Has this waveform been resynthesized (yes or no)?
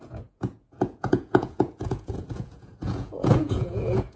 yes